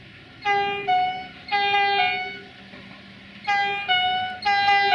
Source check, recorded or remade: recorded